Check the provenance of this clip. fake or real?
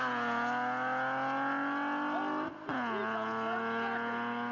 real